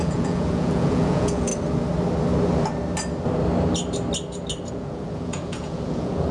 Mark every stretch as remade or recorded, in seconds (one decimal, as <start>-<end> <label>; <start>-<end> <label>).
0.0-1.5 remade; 1.5-4.7 recorded; 4.7-6.3 remade